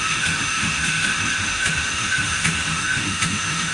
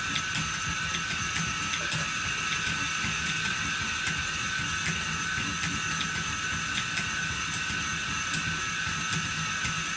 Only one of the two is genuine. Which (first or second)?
second